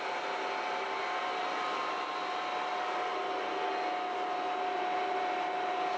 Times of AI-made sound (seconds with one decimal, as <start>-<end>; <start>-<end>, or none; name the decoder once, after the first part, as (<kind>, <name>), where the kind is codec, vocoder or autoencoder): none